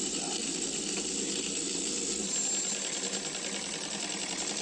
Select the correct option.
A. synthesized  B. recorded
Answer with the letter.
B